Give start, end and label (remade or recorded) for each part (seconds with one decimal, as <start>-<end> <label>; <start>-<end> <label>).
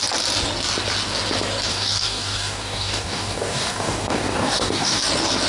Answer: 0.0-1.7 recorded; 1.7-5.0 remade; 5.0-5.5 recorded